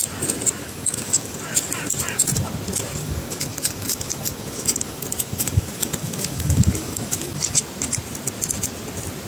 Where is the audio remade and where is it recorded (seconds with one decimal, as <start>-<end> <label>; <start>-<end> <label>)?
0.0-0.6 recorded; 0.6-1.4 remade; 1.4-3.0 recorded; 3.0-7.6 remade; 7.6-9.3 recorded